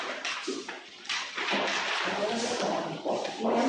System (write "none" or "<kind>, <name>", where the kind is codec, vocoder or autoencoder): none